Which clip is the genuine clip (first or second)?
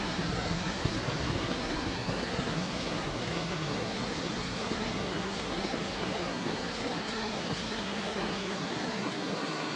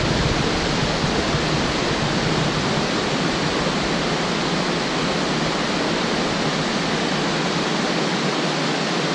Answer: second